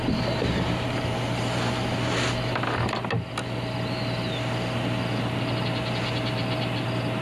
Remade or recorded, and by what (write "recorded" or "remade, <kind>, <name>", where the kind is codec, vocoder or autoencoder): recorded